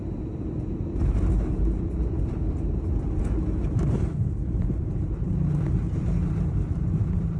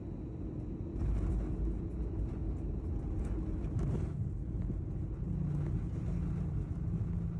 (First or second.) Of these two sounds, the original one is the second